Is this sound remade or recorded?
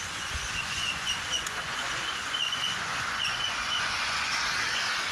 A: remade